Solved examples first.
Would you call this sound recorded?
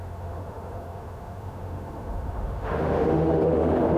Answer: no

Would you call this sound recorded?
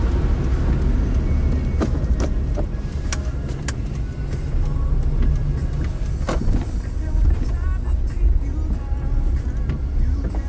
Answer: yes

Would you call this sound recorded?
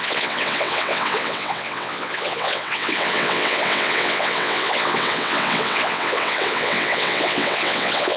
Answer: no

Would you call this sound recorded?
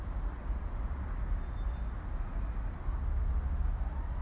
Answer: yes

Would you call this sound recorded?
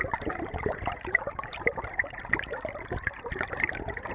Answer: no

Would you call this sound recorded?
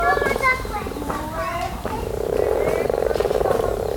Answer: no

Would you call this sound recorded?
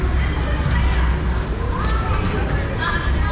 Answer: yes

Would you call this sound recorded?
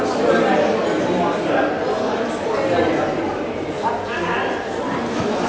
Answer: yes